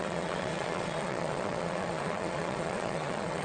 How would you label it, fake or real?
fake